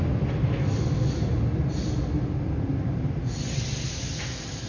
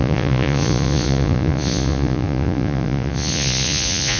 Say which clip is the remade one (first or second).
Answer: second